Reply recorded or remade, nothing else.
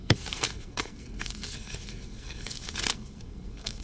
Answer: remade